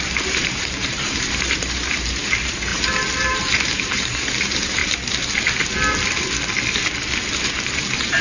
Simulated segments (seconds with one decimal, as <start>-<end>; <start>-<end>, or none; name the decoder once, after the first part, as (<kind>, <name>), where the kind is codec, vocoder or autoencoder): 0.0-4.8 (vocoder, BigVGAN v2); 7.5-8.2